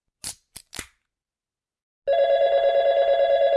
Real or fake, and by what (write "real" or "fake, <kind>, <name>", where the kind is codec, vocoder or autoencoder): real